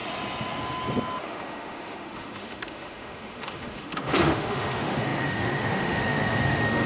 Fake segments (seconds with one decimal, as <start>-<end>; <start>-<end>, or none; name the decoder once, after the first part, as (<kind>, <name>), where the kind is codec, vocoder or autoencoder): 1.2-6.9 (autoencoder, DAC-VAE)